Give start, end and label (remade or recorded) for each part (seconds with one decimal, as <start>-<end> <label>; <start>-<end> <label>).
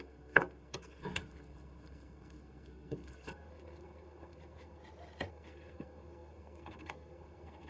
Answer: 0.0-4.8 remade; 4.8-5.3 recorded; 5.3-7.7 remade